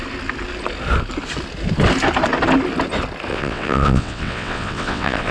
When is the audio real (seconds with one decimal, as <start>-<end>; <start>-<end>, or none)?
0.0-3.3